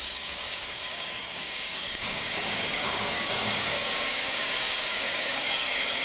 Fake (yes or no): yes